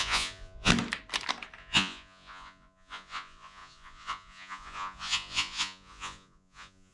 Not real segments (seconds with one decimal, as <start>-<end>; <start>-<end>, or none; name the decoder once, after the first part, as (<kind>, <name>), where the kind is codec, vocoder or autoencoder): 0.0-0.7 (vocoder, Vocos); 1.6-6.9